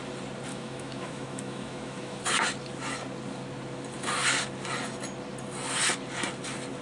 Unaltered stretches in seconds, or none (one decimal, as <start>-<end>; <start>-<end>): 0.0-0.5; 2.2-6.8